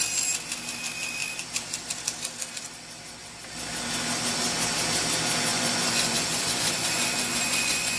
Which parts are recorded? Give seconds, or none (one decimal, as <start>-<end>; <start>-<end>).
0.0-5.5